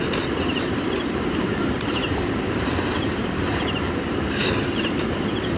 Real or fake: fake